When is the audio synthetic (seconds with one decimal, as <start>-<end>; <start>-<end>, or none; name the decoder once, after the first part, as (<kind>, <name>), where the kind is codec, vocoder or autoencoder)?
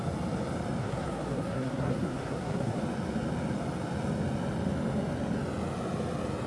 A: 0.8-2.8 (codec, SNAC)